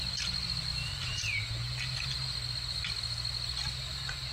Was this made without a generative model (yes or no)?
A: yes